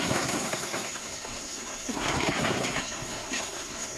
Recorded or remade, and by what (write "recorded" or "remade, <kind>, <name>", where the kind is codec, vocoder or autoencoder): remade, codec, SNAC